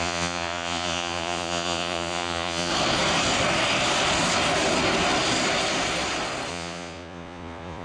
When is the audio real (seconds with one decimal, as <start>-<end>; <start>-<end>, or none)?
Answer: 2.7-6.5